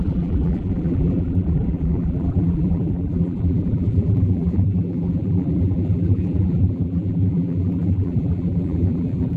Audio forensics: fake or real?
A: fake